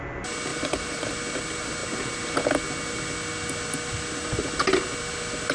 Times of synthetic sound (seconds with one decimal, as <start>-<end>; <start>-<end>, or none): 0.5-1.1